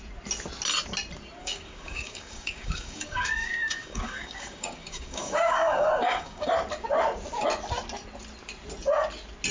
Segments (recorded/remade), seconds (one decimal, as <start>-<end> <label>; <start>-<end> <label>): 0.0-1.4 recorded; 1.4-6.5 remade; 6.5-9.5 recorded